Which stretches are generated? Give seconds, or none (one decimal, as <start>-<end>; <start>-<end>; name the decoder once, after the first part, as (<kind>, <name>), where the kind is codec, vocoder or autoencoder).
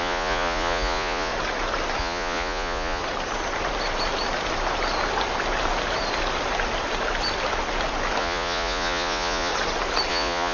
0.0-1.3 (vocoder, Vocos); 2.0-3.0; 8.2-9.5; 10.1-10.5